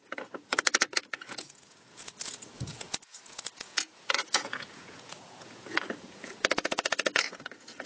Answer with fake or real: fake